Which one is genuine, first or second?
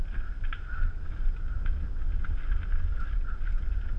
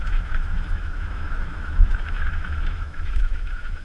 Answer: first